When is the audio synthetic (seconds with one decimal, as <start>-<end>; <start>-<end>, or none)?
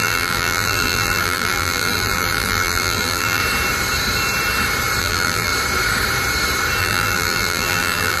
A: 0.0-3.4; 5.0-5.5; 6.8-8.2